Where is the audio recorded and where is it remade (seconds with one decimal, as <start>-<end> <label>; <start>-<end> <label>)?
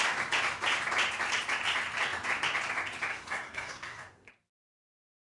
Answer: 0.0-3.1 recorded; 3.1-4.3 remade; 4.3-5.3 recorded